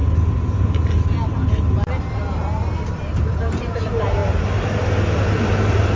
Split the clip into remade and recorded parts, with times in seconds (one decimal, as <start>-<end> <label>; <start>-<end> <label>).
0.0-2.9 recorded; 2.9-4.2 remade; 4.2-6.0 recorded